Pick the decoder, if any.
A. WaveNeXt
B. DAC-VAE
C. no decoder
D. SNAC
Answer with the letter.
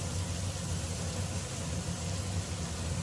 C